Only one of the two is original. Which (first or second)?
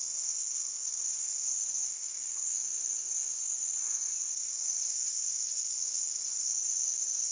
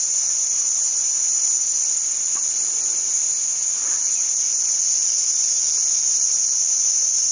second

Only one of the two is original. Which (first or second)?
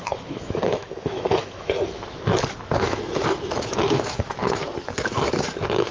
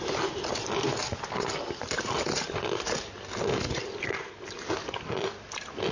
second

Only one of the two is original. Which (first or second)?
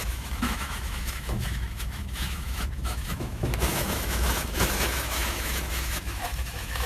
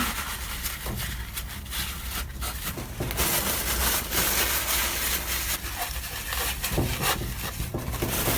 second